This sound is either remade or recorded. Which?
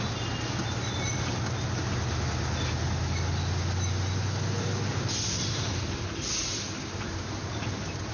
recorded